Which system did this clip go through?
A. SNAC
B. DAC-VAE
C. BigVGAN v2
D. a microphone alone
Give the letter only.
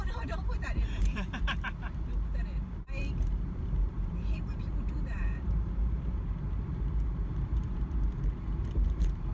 C